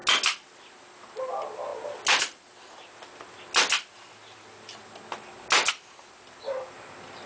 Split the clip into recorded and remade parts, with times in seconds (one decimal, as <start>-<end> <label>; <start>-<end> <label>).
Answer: 0.0-7.3 recorded